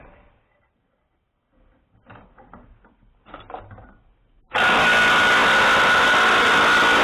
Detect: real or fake real